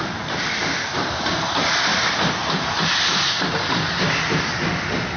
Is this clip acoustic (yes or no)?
no